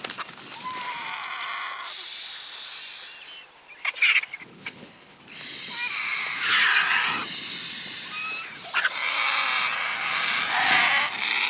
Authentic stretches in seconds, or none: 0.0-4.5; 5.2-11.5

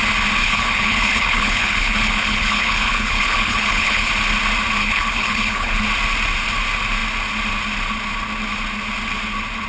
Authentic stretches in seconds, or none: 0.0-0.4; 4.1-4.8; 5.8-9.7